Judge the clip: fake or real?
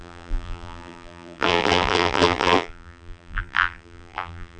fake